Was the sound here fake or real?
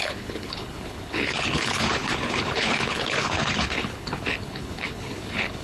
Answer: fake